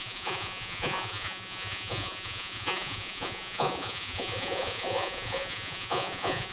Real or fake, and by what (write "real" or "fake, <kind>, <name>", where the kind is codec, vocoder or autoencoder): fake, vocoder, Vocos